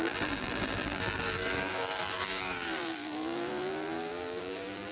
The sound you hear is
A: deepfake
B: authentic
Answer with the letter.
A